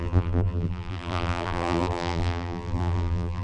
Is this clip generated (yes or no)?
yes